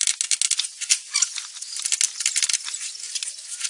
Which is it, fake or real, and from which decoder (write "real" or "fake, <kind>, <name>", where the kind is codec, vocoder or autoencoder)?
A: real